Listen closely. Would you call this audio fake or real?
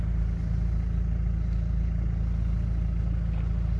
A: real